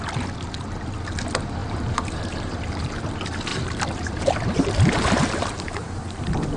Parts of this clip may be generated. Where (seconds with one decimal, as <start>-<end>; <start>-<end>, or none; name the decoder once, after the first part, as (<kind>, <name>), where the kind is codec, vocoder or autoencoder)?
1.6-3.0 (vocoder, BigVGAN v2); 3.5-6.0